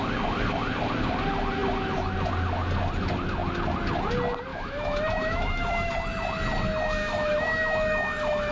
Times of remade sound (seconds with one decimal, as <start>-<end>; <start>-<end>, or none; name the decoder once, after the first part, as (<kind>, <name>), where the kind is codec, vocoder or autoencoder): 4.5-5.9 (autoencoder, DAC-VAE); 7.0-8.5